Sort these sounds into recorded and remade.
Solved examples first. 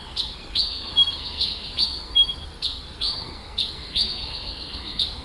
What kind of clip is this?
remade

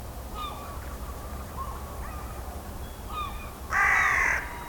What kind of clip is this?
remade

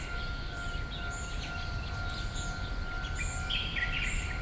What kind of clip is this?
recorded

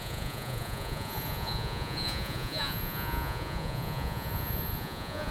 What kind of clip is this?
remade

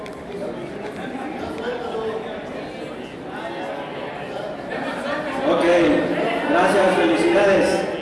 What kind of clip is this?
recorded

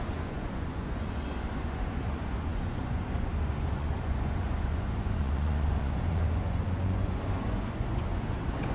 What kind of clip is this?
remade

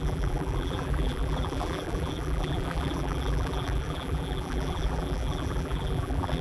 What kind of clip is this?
remade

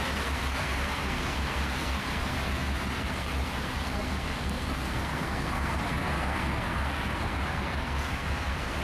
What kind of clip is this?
remade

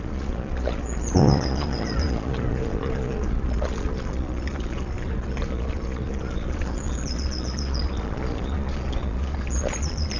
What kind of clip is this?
remade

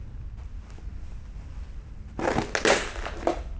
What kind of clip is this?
recorded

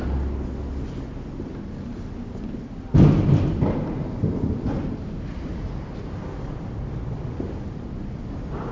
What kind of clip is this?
recorded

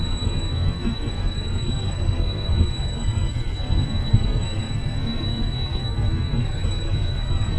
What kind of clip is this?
remade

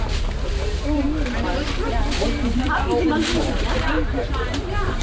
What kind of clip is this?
remade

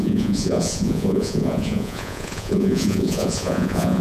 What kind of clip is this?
remade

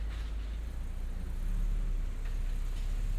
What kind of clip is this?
recorded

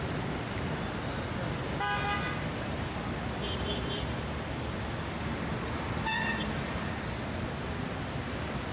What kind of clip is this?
recorded